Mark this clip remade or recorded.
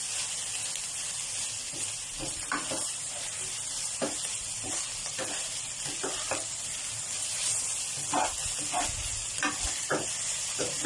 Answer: recorded